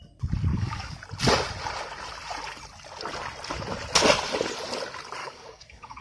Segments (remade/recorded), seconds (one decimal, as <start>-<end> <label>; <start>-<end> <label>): 0.0-0.5 recorded; 0.5-1.0 remade; 1.0-5.2 recorded; 5.2-6.0 remade